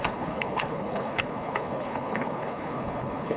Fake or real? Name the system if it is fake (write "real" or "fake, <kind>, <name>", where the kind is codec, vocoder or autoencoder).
fake, codec, HILCodec